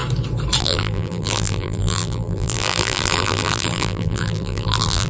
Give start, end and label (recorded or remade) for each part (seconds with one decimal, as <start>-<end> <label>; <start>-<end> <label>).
0.0-0.6 recorded; 0.6-5.1 remade

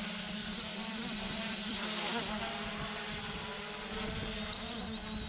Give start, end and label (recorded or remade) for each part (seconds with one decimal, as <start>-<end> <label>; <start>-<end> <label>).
0.0-0.4 recorded; 0.4-2.5 remade; 2.5-5.3 recorded